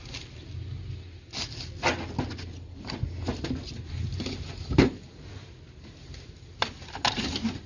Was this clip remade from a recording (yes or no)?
no